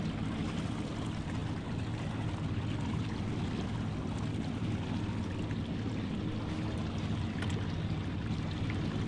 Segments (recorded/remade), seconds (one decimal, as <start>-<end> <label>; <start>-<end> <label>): 0.0-9.1 recorded

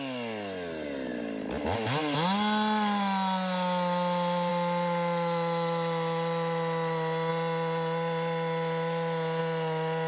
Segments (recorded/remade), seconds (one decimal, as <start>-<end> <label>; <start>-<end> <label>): 0.0-10.1 recorded

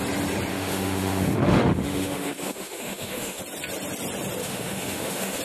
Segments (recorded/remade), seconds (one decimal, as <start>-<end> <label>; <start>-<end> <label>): 0.0-0.5 recorded; 0.5-3.4 remade; 3.4-4.4 recorded; 4.4-5.4 remade

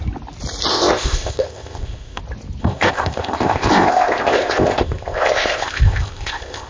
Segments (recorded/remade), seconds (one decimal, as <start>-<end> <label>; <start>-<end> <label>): 0.0-0.7 recorded; 0.7-2.2 remade; 2.2-2.6 recorded; 2.6-6.7 remade

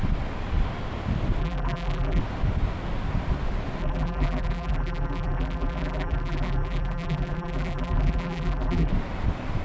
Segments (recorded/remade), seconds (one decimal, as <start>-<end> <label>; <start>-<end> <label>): 0.0-1.4 recorded; 1.4-2.2 remade; 2.2-3.8 recorded; 3.8-8.9 remade; 8.9-9.6 recorded

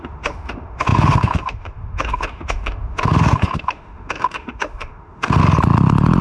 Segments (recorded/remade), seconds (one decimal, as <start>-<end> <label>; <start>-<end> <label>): 0.0-5.4 remade; 5.4-6.2 recorded

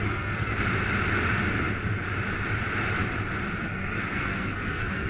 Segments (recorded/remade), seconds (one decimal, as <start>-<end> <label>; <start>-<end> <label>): 0.0-0.5 remade; 0.5-3.6 recorded; 3.6-5.1 remade

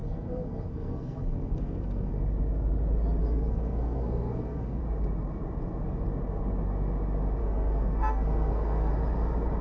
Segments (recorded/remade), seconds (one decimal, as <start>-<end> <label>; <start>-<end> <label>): 0.0-2.1 remade; 2.1-3.2 recorded; 3.2-4.8 remade; 4.8-7.4 recorded; 7.4-8.9 remade; 8.9-9.6 recorded